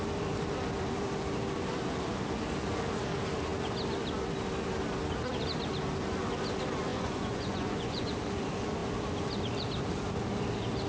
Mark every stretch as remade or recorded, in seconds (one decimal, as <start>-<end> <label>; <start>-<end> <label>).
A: 0.0-6.9 recorded; 6.9-8.1 remade; 8.1-10.9 recorded